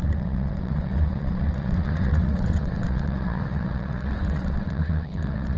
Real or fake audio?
fake